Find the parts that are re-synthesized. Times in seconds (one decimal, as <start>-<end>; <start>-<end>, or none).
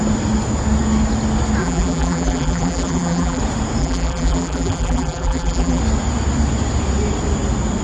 1.6-3.4; 3.8-5.8